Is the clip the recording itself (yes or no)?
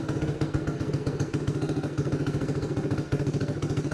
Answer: no